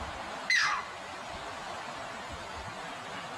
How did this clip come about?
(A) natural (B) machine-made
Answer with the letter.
B